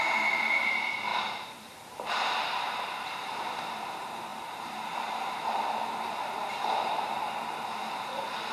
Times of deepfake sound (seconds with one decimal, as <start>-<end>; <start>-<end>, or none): 0.0-8.5